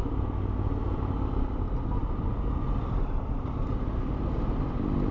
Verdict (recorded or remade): recorded